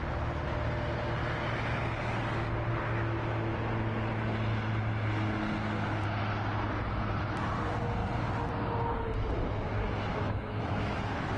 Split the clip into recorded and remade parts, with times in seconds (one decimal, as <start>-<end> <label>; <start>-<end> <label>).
0.0-10.1 recorded; 10.1-11.4 remade